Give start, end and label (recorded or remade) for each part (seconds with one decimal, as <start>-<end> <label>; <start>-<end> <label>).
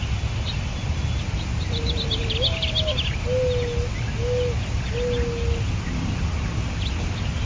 0.0-7.5 recorded